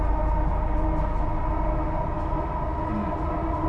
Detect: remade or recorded recorded